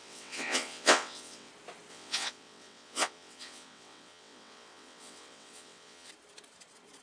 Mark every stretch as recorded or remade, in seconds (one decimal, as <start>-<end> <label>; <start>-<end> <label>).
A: 0.0-1.5 remade; 1.5-1.9 recorded; 1.9-6.1 remade; 6.1-7.0 recorded